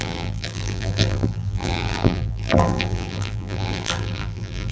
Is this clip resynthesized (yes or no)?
yes